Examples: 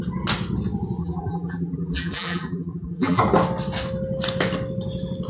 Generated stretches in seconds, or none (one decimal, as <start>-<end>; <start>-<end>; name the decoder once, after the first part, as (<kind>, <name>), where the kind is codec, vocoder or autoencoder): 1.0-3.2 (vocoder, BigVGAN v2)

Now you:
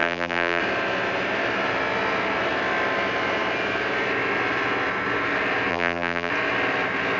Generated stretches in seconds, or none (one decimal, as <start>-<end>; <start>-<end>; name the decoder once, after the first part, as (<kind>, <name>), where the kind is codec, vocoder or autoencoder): 0.0-0.6 (vocoder, BigVGAN v2); 5.7-6.3

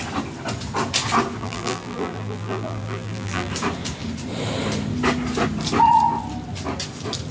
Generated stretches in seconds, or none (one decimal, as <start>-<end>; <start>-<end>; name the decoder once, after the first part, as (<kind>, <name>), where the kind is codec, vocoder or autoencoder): 1.4-3.5 (vocoder, BigVGAN v2)